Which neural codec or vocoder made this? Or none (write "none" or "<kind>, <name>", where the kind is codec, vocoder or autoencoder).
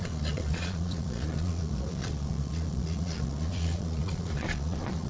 vocoder, Vocos